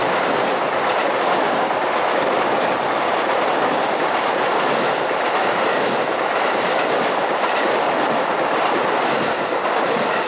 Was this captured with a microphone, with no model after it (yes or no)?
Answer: yes